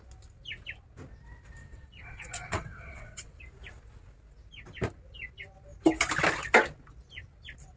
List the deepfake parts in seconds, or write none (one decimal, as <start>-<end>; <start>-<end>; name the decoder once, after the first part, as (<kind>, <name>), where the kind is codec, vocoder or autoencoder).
1.6-3.4 (vocoder, WaveNeXt)